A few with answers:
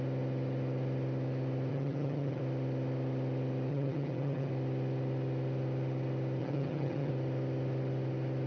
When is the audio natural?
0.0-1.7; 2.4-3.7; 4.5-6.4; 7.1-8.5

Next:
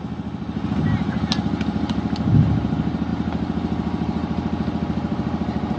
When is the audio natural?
0.0-5.8

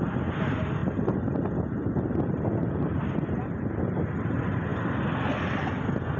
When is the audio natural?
0.0-6.2

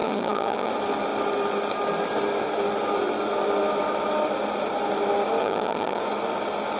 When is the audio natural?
0.7-5.4; 6.0-6.8

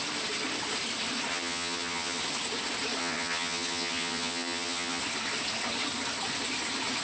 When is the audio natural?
0.0-1.3; 2.2-3.0; 5.0-7.0